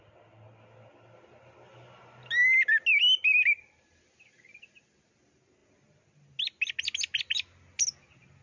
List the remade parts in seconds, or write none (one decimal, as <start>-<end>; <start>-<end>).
none